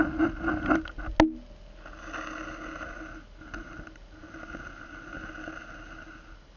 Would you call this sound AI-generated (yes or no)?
no